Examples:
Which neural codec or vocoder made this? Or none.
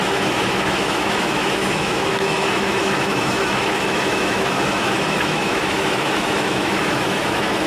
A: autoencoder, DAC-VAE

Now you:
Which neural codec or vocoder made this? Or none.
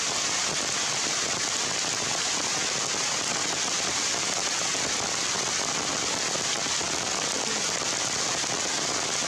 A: none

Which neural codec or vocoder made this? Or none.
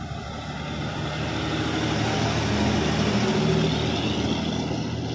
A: none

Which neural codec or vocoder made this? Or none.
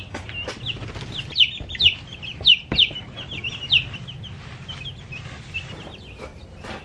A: none